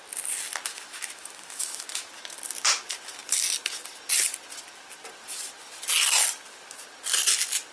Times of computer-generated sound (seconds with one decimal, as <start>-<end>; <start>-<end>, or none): 0.7-2.1